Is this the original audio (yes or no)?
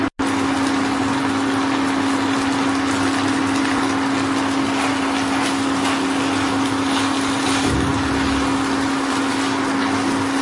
yes